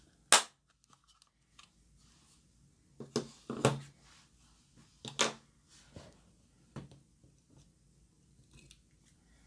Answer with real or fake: real